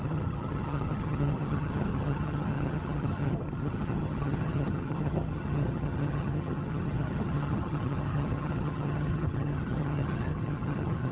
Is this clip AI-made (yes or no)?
yes